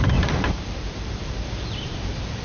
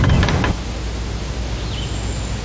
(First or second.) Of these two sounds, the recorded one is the second